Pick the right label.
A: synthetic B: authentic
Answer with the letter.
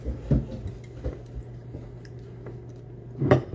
B